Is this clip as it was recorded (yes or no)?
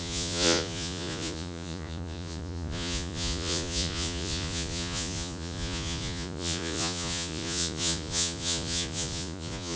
no